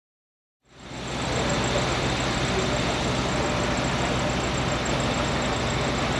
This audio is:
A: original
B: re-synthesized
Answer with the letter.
A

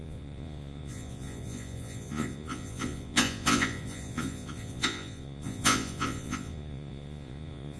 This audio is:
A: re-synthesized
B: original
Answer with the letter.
A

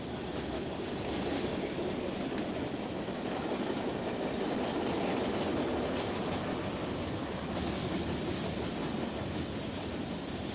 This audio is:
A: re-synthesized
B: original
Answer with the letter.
B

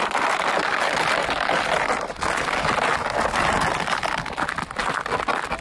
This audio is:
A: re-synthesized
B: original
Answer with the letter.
B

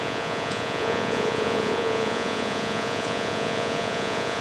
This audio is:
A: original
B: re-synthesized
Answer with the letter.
B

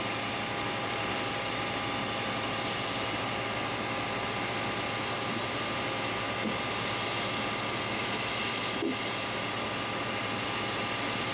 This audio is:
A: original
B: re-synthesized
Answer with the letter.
A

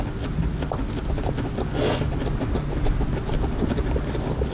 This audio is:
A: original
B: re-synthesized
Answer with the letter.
A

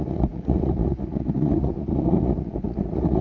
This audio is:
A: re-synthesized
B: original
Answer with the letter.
A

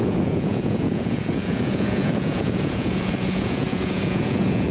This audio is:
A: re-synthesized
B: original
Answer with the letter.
A